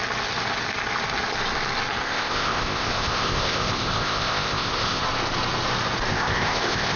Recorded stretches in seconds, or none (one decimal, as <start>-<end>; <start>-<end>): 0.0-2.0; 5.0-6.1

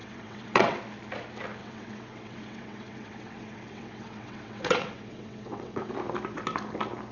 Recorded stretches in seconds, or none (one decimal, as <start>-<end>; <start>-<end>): 0.8-1.6; 5.9-7.1

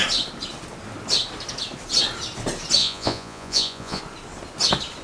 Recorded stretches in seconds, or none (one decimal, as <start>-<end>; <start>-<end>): 0.0-2.8; 4.0-5.0

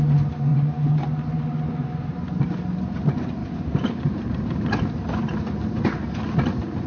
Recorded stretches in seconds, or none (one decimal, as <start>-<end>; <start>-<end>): 0.0-0.5; 2.4-3.4; 5.8-6.9